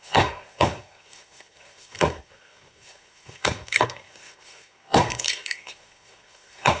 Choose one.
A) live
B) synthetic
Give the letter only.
B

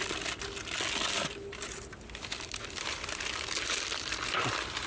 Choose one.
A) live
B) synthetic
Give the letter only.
A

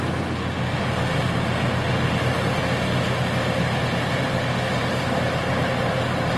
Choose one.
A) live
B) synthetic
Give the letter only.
A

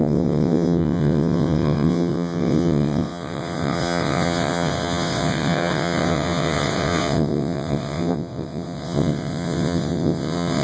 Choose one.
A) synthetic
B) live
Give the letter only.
A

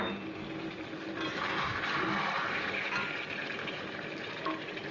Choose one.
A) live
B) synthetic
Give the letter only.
A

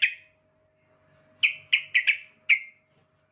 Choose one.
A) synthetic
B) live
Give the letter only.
B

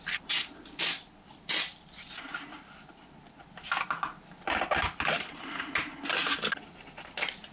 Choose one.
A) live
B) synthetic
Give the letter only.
A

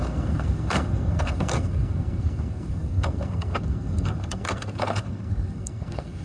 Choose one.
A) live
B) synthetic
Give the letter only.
B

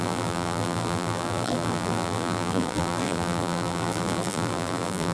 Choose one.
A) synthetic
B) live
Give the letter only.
A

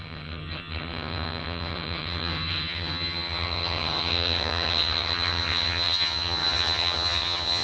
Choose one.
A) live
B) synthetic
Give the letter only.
B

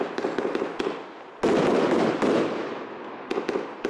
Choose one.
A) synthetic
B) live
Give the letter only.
B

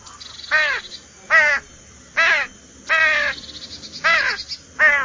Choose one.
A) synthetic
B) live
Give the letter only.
B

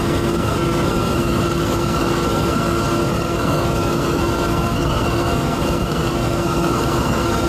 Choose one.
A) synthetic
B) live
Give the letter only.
A